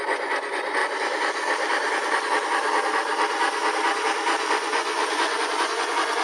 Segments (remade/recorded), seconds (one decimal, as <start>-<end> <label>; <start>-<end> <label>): 0.0-0.8 remade; 0.8-4.5 recorded; 4.5-6.2 remade